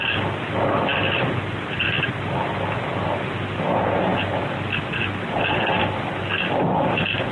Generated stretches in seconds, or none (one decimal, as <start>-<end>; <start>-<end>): none